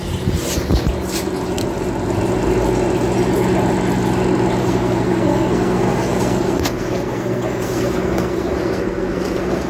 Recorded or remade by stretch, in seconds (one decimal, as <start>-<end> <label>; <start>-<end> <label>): 0.0-4.6 recorded; 4.6-9.7 remade